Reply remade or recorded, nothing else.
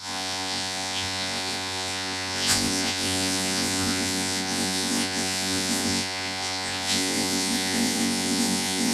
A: remade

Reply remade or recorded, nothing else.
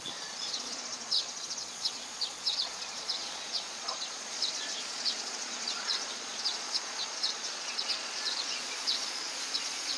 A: remade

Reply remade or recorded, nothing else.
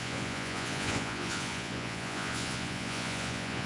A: remade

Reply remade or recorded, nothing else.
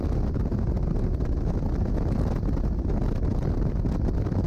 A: recorded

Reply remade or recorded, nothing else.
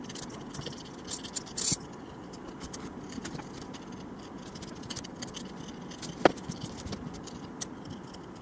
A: recorded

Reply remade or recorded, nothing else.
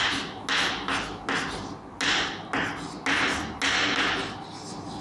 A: recorded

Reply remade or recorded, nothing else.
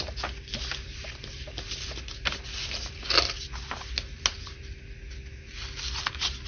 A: recorded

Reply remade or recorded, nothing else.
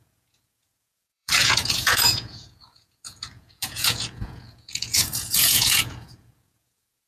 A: remade